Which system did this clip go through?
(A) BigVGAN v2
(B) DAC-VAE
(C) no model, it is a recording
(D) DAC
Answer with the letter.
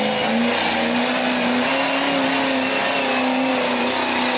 C